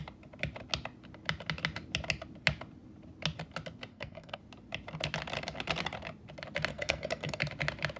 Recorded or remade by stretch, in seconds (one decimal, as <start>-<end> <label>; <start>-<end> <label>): 0.0-3.9 recorded; 3.9-4.4 remade; 4.4-6.7 recorded; 6.7-7.4 remade; 7.4-8.0 recorded